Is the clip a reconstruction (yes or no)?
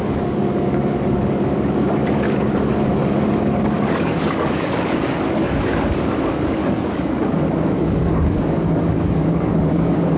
yes